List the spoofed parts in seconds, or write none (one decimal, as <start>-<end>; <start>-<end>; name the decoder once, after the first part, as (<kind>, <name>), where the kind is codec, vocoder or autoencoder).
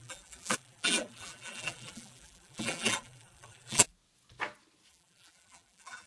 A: 0.0-3.9 (vocoder, BigVGAN v2); 4.9-6.1